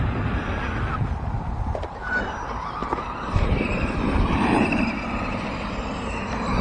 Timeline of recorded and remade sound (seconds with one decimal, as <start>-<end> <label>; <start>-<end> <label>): 0.0-2.8 recorded; 2.8-4.9 remade; 4.9-6.6 recorded